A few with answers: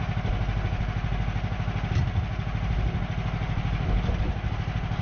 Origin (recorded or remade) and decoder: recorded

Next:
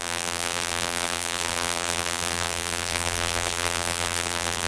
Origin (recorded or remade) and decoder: remade, vocoder, BigVGAN v2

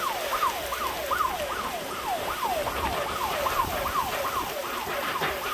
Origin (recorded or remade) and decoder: recorded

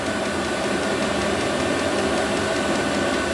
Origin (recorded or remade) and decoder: recorded